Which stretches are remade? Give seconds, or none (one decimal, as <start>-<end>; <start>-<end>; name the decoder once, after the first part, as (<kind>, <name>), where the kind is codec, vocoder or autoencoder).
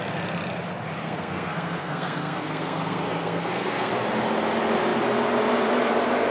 1.0-3.9 (codec, SNAC)